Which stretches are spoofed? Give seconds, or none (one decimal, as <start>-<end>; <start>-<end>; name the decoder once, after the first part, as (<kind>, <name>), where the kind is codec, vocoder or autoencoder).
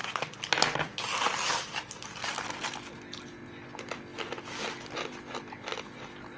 none